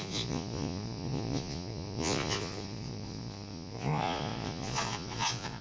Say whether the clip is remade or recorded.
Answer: remade